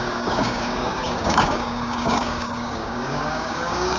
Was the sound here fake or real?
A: fake